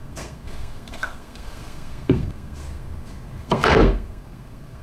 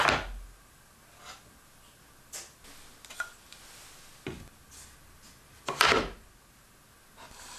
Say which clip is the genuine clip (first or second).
second